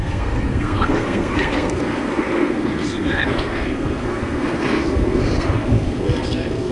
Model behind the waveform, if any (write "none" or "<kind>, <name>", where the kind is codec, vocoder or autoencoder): codec, SNAC